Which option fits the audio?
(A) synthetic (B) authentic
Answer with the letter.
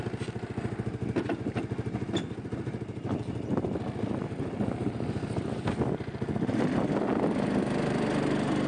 B